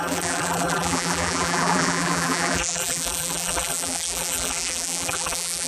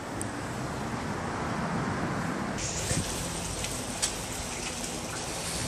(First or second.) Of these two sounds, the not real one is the first